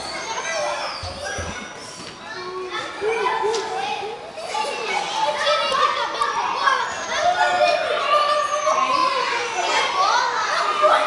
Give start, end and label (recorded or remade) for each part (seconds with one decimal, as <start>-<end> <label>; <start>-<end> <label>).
0.0-11.1 recorded